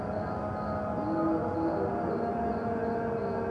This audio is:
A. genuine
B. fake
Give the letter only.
A